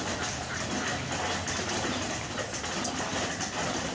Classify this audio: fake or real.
real